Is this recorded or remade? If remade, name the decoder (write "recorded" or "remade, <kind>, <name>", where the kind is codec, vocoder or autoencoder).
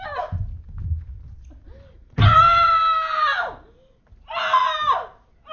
recorded